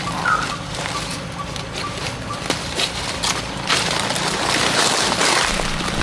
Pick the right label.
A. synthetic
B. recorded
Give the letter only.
B